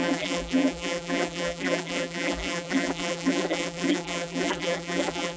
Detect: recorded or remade remade